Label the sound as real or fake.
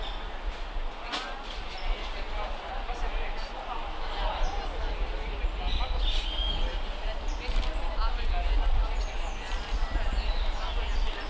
real